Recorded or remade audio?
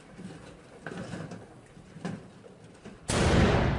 recorded